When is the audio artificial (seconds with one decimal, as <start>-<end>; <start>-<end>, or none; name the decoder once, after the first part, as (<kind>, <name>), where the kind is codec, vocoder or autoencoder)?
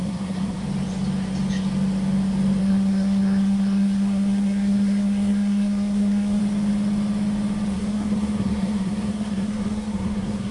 0.0-0.6 (codec, SNAC); 2.6-6.4; 7.7-10.5